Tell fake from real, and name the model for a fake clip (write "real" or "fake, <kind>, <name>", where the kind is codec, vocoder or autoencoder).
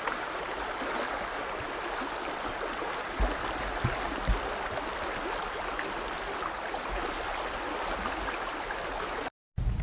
real